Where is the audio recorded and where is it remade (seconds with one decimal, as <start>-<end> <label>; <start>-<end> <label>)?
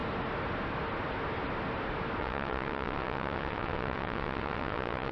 0.0-2.2 recorded; 2.2-5.1 remade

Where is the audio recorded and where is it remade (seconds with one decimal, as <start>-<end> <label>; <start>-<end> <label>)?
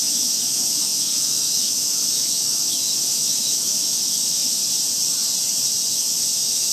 0.0-4.6 remade; 4.6-5.9 recorded; 5.9-6.7 remade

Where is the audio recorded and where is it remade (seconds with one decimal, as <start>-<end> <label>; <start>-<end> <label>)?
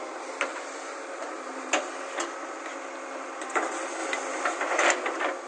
0.0-0.5 recorded; 0.5-1.8 remade; 1.8-5.5 recorded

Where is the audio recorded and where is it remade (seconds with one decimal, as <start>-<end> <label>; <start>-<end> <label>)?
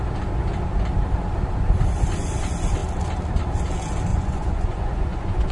0.0-4.1 recorded; 4.1-5.5 remade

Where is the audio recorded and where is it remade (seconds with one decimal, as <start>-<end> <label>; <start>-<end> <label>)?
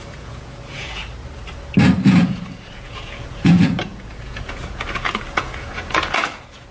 0.0-1.0 remade; 1.0-2.0 recorded; 2.0-6.7 remade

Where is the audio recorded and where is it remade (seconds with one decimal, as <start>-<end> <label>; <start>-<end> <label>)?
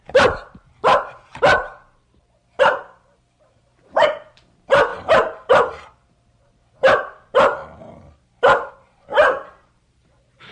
0.0-7.6 remade; 7.6-8.7 recorded; 8.7-10.5 remade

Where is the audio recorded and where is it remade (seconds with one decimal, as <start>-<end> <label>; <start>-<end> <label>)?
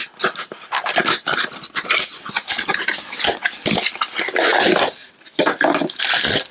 0.0-6.5 recorded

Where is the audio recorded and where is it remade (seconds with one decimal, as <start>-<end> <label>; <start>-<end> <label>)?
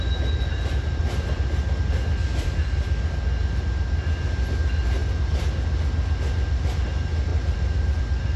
0.0-0.5 recorded; 0.5-1.0 remade; 1.0-5.0 recorded; 5.0-5.5 remade; 5.5-7.3 recorded; 7.3-8.0 remade; 8.0-8.4 recorded